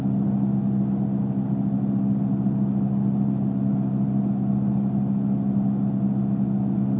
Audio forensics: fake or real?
real